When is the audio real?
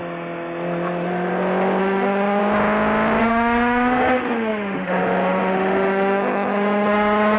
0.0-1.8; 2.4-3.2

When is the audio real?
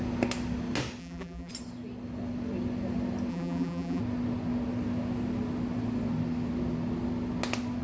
0.0-1.0; 1.5-3.3; 4.0-7.8